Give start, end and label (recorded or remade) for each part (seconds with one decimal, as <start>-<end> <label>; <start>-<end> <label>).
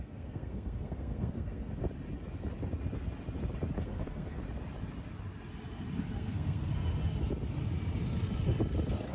0.0-1.8 remade; 1.8-3.8 recorded; 3.8-4.4 remade; 4.4-6.1 recorded; 6.1-6.7 remade; 6.7-9.1 recorded